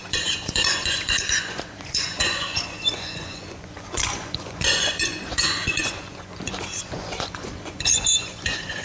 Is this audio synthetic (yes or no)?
yes